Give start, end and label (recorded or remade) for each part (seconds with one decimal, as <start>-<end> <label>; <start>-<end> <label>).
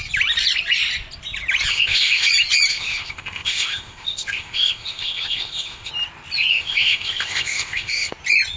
0.0-1.7 recorded; 1.7-2.3 remade; 2.3-2.7 recorded; 2.7-5.9 remade; 5.9-6.5 recorded; 6.5-8.1 remade; 8.1-8.6 recorded